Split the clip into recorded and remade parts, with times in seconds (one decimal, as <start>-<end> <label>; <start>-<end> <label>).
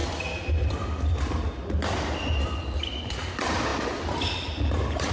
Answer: 0.0-5.1 recorded